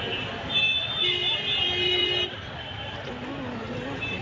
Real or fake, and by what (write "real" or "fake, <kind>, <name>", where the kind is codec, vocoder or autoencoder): real